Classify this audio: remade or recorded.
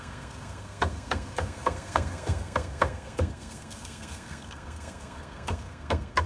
remade